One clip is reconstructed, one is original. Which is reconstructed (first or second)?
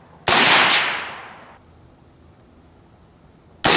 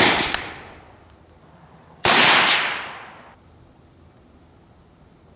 second